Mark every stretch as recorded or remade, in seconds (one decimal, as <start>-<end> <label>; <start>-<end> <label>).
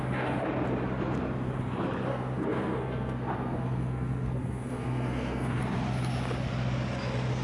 0.0-2.1 recorded; 2.1-5.6 remade; 5.6-7.4 recorded